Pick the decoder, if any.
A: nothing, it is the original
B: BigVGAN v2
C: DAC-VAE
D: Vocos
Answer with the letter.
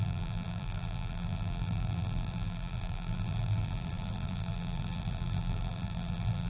B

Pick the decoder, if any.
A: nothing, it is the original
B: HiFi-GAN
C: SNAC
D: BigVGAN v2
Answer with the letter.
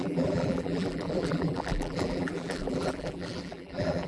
D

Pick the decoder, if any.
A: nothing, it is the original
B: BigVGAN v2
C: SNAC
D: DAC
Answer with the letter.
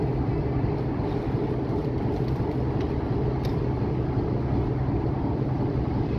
A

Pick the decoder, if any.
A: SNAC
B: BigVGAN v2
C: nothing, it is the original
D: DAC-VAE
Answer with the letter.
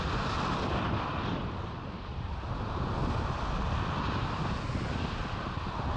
C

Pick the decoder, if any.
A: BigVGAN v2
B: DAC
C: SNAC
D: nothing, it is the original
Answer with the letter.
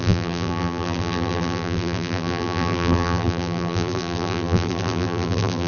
A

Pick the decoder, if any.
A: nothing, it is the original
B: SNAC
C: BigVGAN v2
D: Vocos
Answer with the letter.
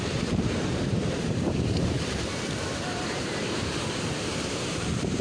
C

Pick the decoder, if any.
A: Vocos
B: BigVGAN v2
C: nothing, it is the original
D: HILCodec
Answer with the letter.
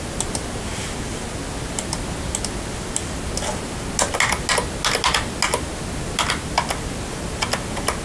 C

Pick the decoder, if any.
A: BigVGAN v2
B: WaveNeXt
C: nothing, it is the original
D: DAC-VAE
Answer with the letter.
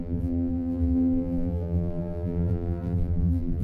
A